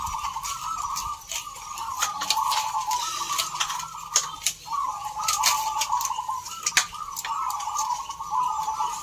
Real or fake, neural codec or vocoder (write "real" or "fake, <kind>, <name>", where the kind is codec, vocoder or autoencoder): real